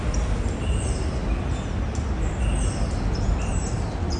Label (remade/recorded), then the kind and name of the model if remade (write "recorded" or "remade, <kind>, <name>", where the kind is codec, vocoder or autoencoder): recorded